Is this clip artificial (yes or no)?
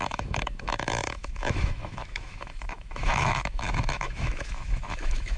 yes